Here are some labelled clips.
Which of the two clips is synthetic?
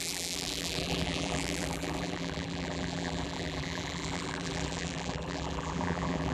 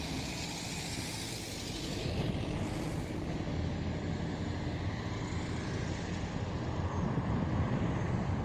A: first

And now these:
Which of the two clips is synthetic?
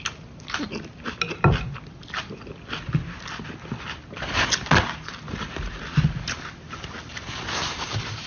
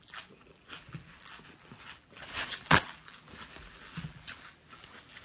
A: second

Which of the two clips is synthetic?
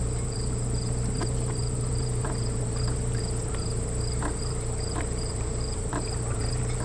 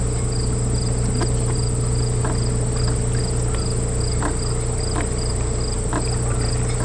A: first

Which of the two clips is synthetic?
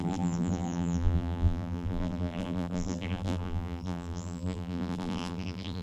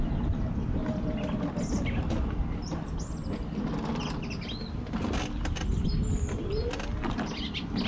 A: first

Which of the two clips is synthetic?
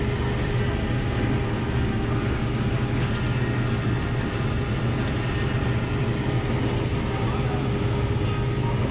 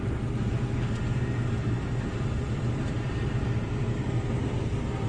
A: second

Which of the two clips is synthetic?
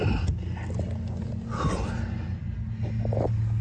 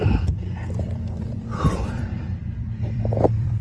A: second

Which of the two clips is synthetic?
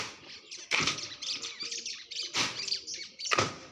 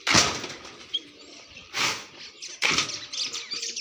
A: first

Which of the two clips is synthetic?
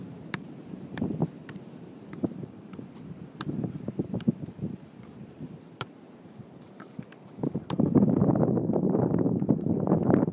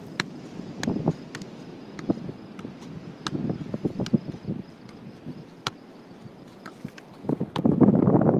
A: first